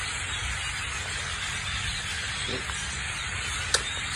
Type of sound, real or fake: real